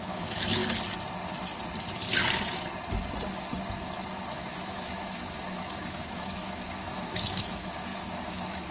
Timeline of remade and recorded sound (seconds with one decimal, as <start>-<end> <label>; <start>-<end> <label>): 0.0-0.6 remade; 0.6-4.3 recorded; 4.3-8.7 remade